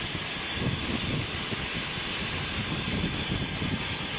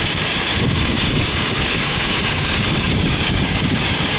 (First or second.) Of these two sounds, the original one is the first